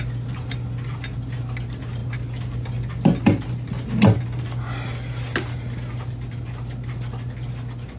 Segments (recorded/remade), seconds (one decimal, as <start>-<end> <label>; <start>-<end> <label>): 0.0-8.0 recorded